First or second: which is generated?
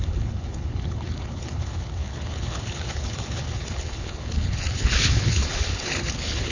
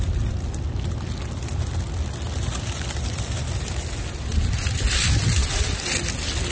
first